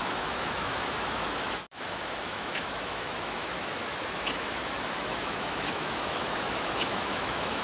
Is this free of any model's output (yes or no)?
no